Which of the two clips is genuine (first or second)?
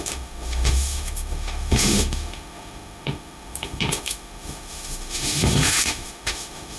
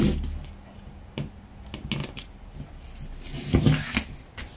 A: second